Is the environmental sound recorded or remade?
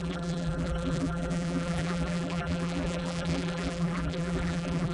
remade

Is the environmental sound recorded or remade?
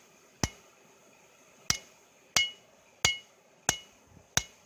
recorded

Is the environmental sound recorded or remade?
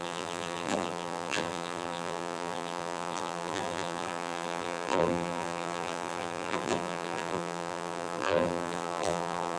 remade